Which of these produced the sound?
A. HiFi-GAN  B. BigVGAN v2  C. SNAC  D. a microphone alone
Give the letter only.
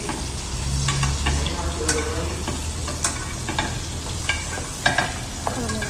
D